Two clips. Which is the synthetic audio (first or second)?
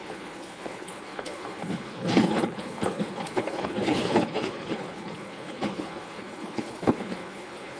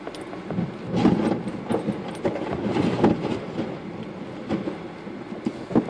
first